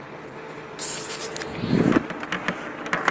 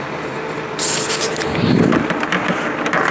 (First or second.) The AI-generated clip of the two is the second